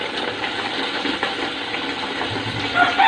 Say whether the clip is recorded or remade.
recorded